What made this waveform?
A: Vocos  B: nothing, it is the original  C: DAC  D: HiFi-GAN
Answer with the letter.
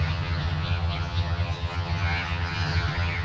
D